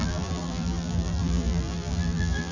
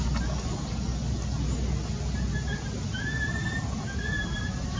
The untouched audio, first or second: second